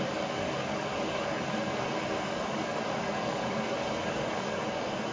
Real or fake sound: fake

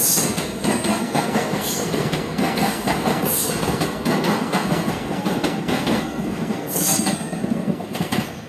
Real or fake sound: fake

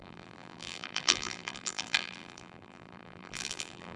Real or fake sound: fake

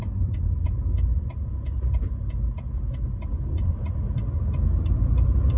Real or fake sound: real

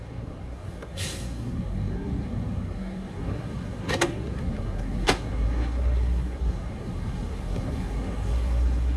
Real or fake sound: fake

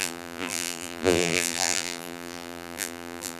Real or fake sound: fake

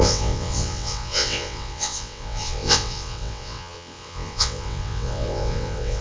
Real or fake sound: fake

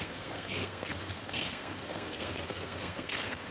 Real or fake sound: fake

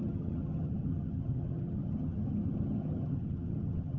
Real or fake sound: fake